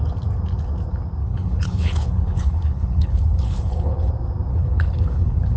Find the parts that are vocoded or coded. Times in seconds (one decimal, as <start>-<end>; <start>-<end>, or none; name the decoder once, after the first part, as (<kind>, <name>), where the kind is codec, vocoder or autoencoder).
1.2-4.1 (codec, HILCodec); 4.5-5.6